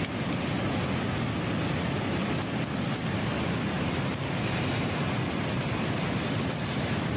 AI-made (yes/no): no